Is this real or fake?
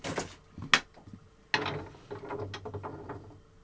real